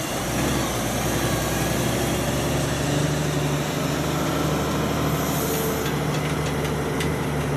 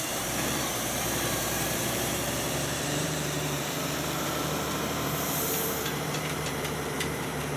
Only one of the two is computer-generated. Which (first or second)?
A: second